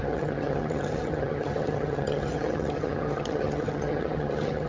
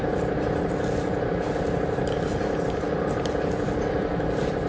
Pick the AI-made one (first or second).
first